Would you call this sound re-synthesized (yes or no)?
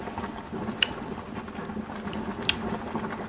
no